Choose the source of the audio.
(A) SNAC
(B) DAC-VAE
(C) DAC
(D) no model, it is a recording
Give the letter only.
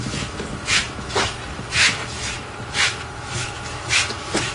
B